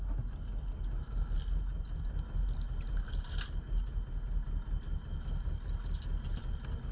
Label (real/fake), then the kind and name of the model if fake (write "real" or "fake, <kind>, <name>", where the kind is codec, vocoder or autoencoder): real